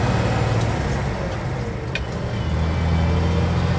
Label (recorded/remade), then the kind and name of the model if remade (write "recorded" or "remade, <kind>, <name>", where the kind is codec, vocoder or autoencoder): recorded